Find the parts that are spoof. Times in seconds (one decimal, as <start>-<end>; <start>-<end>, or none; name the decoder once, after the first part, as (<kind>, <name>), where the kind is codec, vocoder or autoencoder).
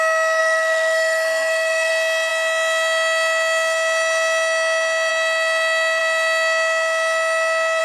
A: 0.4-1.9 (codec, SNAC)